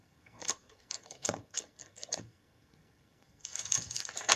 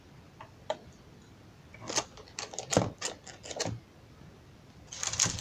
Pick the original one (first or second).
second